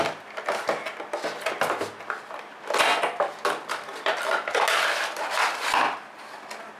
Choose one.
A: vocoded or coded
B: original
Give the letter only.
B